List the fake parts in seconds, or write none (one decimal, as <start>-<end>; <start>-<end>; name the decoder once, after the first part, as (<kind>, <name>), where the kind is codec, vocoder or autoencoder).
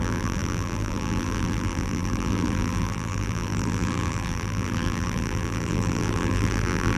0.0-7.0 (vocoder, BigVGAN v2)